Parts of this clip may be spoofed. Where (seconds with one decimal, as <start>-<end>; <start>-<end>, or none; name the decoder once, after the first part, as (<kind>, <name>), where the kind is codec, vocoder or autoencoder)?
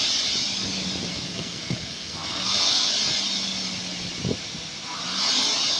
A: 1.1-2.9 (codec, SNAC)